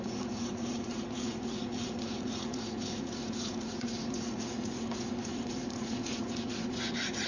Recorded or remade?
remade